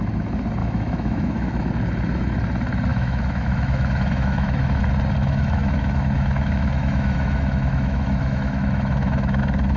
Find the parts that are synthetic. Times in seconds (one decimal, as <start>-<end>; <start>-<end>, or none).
0.6-1.7; 2.9-4.8; 5.2-9.4